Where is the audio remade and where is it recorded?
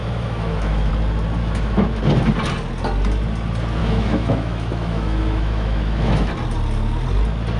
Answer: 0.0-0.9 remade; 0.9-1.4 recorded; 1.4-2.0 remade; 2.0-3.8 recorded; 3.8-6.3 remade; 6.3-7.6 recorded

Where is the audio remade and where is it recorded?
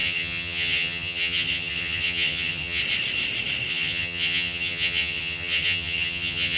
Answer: 0.0-2.8 remade; 2.8-3.7 recorded; 3.7-6.6 remade